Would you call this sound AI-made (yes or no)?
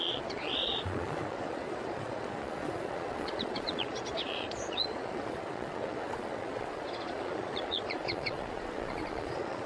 yes